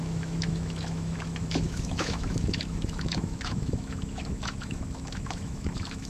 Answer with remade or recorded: remade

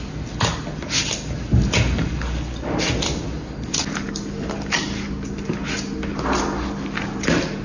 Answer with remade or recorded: recorded